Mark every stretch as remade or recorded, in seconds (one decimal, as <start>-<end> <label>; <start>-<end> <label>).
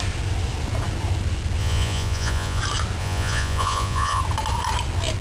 0.0-1.6 recorded; 1.6-2.6 remade; 2.6-3.0 recorded; 3.0-4.2 remade; 4.2-5.2 recorded